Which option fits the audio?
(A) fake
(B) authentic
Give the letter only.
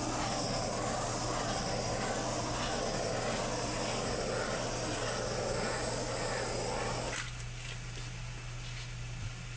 B